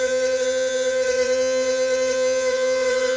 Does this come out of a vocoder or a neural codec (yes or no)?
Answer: yes